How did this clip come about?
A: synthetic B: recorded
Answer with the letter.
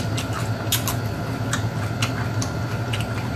B